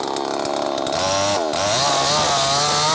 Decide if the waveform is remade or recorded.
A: recorded